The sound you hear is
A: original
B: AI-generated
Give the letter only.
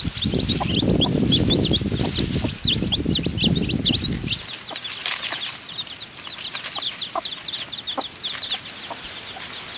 A